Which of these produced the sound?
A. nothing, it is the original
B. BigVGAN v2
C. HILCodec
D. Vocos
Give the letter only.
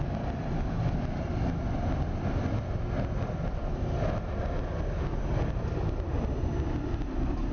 A